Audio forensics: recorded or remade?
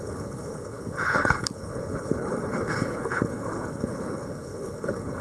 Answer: remade